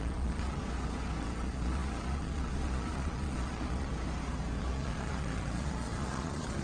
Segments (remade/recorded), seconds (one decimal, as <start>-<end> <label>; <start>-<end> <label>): 0.0-0.6 remade; 0.6-1.2 recorded; 1.2-3.9 remade; 3.9-4.6 recorded; 4.6-6.6 remade